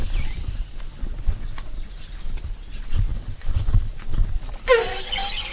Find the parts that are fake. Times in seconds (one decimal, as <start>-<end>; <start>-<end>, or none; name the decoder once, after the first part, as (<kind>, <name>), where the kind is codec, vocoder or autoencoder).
0.0-1.9 (vocoder, BigVGAN v2); 3.1-4.5